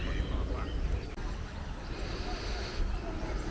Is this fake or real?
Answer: real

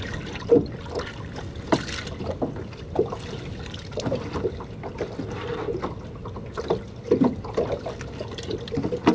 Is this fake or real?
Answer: real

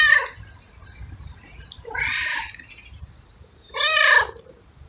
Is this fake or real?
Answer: fake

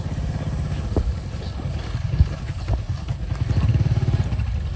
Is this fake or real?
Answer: real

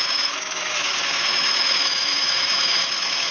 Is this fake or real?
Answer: fake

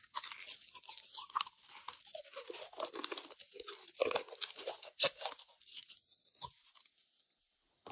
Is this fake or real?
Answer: real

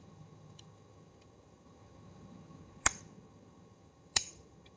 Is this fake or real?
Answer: fake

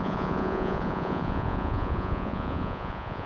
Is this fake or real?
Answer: fake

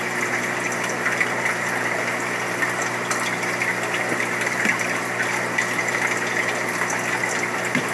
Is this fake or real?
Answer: real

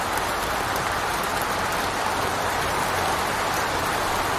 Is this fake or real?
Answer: real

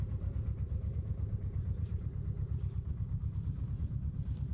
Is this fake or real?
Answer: fake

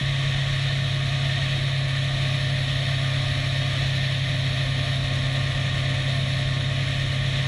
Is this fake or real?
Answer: real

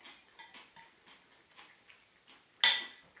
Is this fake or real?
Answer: real